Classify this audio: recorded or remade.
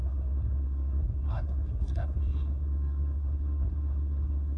remade